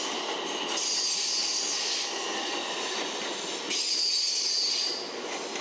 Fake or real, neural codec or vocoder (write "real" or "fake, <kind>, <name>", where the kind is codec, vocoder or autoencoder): real